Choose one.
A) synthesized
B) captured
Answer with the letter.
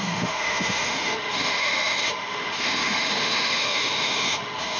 A